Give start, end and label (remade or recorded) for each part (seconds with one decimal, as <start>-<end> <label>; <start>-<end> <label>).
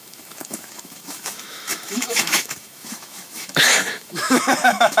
0.0-5.0 remade